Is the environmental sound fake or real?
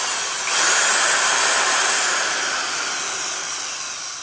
real